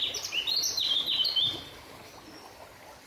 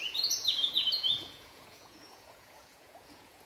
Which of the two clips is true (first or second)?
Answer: first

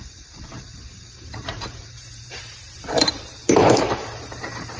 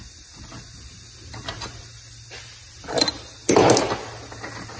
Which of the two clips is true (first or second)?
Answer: second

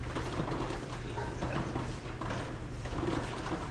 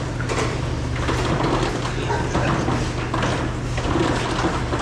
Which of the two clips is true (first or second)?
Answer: second